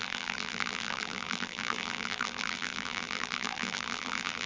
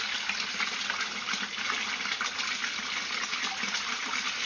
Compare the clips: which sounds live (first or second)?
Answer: second